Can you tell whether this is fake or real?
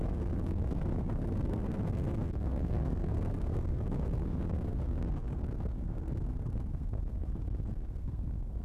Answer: fake